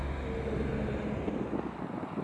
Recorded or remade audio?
recorded